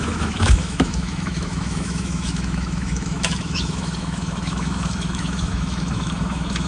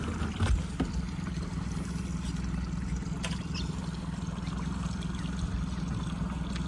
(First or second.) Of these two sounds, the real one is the second